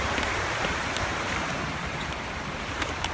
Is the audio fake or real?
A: fake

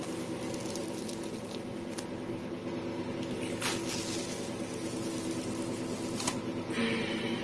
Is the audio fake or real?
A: real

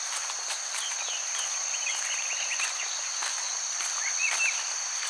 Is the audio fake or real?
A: real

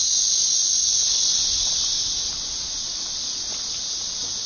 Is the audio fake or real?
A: real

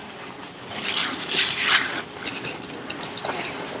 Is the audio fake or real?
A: real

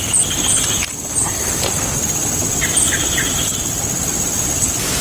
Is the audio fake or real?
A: real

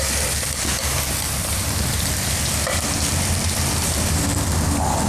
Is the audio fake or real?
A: real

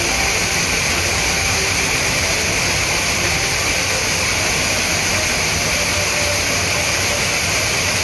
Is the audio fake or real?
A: real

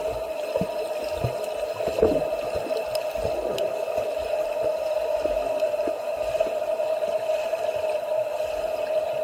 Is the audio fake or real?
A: real